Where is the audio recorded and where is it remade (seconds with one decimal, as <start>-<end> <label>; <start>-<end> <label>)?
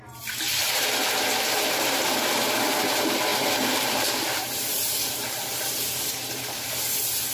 0.0-0.6 recorded; 0.6-2.0 remade; 2.0-3.3 recorded; 3.3-6.1 remade; 6.1-7.3 recorded